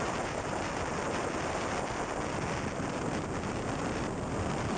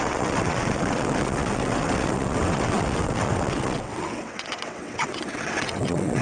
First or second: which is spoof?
second